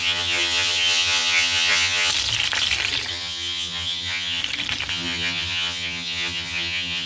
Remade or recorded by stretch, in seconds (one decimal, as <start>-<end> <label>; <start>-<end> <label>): 0.0-2.1 remade; 2.1-3.1 recorded; 3.1-4.4 remade; 4.4-4.9 recorded; 4.9-7.1 remade